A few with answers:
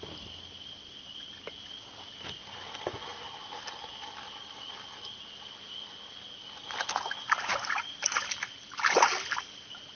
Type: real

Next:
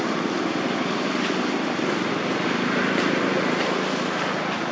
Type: real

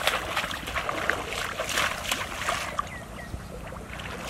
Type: real